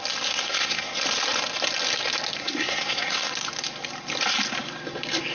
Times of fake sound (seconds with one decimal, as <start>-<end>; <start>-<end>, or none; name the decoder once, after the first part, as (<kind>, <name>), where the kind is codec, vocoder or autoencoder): 0.4-1.0 (codec, SNAC); 2.4-3.3